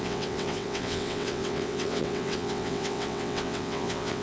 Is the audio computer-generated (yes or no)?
yes